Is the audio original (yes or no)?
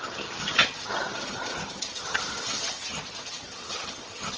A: no